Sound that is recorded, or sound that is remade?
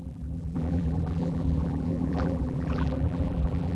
remade